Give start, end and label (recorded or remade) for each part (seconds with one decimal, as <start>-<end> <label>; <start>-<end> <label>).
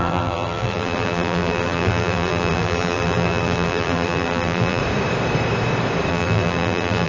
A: 0.0-4.8 remade; 4.8-6.1 recorded; 6.1-7.1 remade